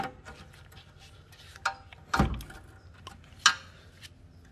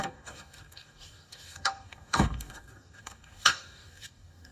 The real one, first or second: first